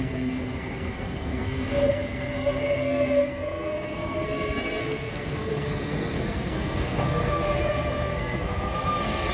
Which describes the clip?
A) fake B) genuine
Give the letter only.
A